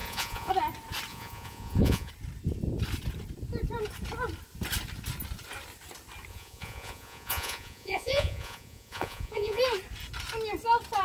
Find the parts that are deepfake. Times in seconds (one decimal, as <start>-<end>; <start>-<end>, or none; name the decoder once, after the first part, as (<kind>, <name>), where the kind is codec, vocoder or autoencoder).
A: 0.0-0.5 (vocoder, Vocos); 1.1-2.1; 6.3-9.6